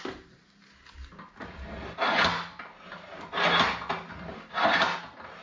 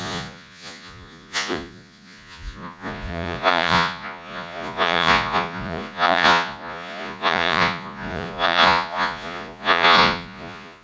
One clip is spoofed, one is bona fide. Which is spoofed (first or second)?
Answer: second